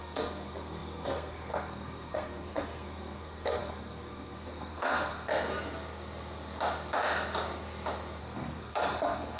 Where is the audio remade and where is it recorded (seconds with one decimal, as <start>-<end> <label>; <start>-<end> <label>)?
0.0-5.3 remade; 5.3-8.2 recorded; 8.2-9.4 remade

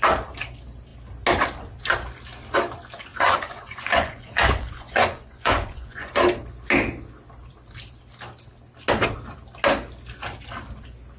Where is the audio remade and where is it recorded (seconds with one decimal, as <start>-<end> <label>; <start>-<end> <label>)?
0.0-3.1 recorded; 3.1-6.1 remade; 6.1-11.2 recorded